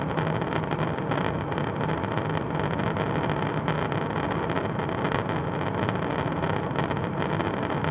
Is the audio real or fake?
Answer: real